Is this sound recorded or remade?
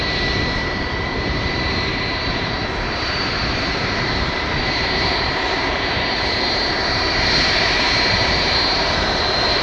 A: remade